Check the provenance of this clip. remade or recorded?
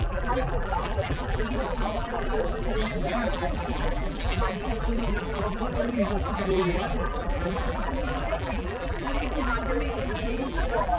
remade